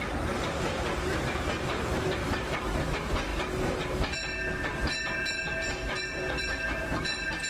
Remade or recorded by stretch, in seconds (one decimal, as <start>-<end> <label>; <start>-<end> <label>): 0.0-0.4 recorded; 0.4-2.6 remade; 2.6-7.5 recorded